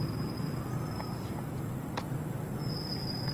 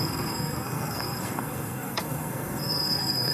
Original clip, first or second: first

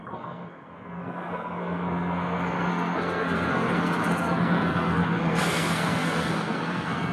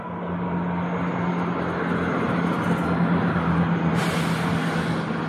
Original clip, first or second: second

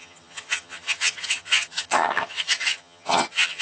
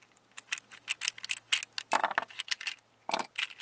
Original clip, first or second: second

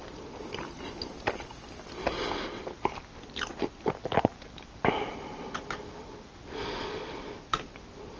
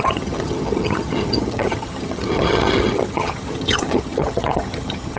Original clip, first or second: first